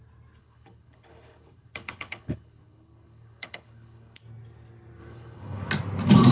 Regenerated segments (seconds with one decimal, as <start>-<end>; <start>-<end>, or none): 0.4-4.2; 5.0-5.7